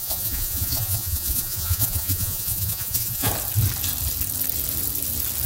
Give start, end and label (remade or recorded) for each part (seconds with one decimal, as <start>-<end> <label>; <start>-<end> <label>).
0.0-3.3 remade; 3.3-5.5 recorded